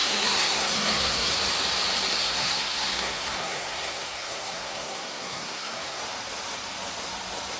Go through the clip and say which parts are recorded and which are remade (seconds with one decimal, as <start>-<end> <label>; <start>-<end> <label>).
0.0-1.4 remade; 1.4-2.2 recorded; 2.2-6.0 remade; 6.0-7.6 recorded